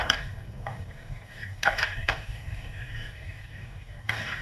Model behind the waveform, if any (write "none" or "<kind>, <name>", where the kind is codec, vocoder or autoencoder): codec, DAC